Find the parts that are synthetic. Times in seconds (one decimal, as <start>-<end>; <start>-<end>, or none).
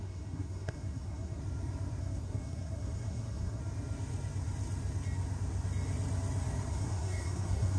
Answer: 0.0-1.4; 2.0-3.6; 6.7-7.8